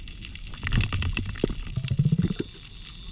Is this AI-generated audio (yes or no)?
no